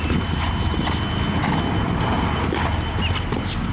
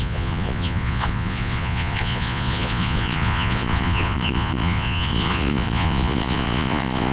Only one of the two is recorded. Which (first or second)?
first